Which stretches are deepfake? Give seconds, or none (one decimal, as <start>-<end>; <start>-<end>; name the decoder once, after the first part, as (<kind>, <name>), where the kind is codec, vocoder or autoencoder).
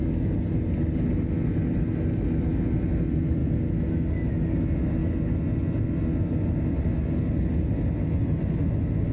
none